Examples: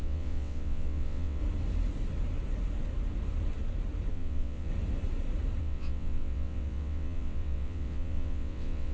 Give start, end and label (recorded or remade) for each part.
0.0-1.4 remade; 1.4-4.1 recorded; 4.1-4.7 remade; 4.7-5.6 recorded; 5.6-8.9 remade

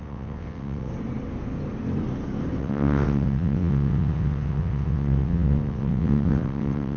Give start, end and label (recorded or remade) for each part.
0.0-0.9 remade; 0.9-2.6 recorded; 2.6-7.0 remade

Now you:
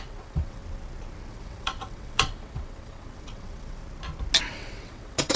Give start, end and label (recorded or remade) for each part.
0.0-0.6 remade; 0.6-1.3 recorded; 1.3-3.8 remade; 3.8-4.4 recorded; 4.4-5.4 remade